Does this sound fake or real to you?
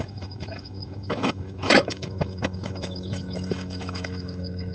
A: fake